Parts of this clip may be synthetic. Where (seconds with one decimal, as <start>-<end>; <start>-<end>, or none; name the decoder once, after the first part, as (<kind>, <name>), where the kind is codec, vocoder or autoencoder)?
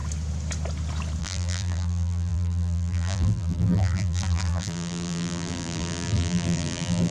1.2-7.1 (vocoder, BigVGAN v2)